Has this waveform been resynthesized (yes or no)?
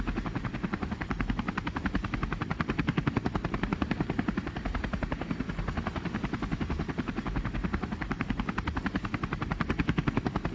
yes